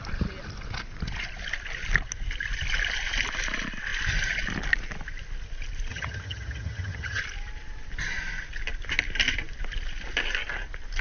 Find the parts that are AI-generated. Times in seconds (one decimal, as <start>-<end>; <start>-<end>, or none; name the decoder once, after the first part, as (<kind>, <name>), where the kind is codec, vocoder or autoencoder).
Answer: 5.9-7.2 (vocoder, HiFi-GAN)